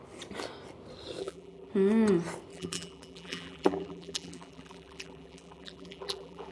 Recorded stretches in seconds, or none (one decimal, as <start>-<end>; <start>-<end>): 0.0-1.2; 1.7-2.5